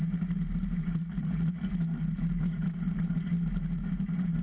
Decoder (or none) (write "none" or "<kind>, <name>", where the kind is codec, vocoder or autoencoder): vocoder, BigVGAN v2